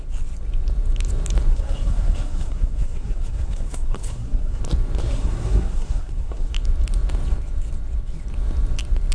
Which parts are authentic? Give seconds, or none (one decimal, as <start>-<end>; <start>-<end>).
0.0-1.5; 4.6-5.0; 6.5-9.1